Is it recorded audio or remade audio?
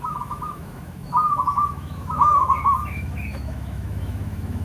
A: remade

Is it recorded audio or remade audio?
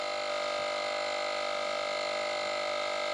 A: recorded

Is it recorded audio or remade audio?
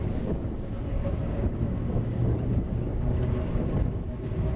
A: remade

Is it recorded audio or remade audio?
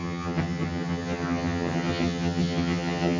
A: remade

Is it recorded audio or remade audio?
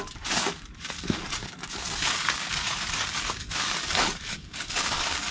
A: remade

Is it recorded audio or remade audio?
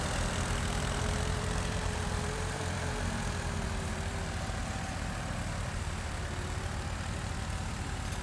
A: remade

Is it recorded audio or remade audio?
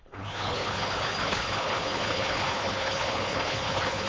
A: remade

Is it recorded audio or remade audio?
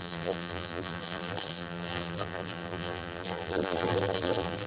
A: remade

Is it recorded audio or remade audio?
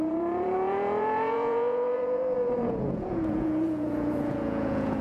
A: remade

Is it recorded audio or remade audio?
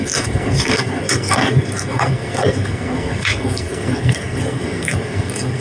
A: remade